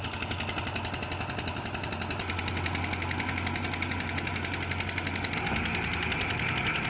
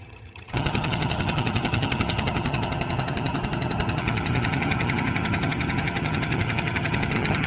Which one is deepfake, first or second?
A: second